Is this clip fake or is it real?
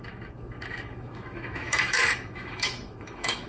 fake